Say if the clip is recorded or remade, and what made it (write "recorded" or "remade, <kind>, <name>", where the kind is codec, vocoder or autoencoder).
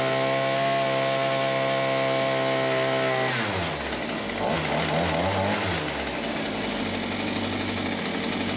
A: recorded